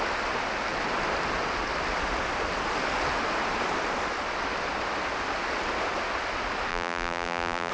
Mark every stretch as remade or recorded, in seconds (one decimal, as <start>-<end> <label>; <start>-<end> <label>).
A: 0.0-6.7 recorded; 6.7-7.7 remade